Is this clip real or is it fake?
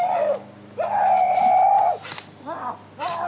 real